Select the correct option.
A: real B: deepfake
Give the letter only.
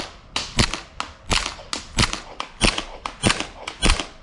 A